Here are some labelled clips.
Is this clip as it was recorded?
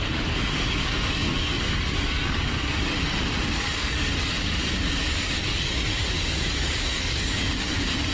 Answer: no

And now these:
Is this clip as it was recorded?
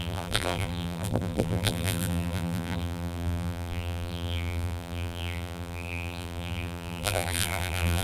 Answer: no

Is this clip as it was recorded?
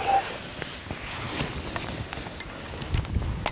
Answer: yes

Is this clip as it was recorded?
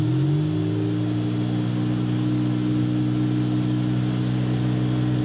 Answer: yes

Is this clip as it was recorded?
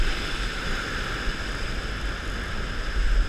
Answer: yes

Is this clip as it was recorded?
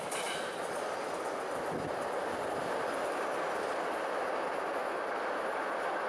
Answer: yes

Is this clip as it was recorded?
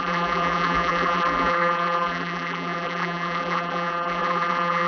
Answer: no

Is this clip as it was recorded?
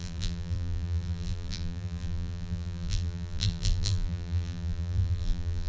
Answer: no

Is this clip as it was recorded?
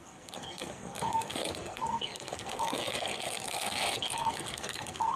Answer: no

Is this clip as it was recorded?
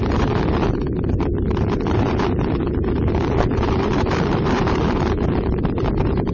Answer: no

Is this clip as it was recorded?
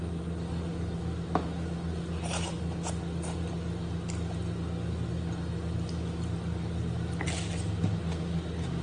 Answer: yes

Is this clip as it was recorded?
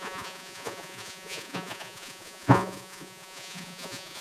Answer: no